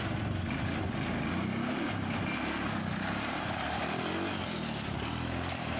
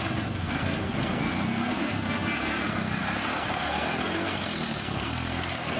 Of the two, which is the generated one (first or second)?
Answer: second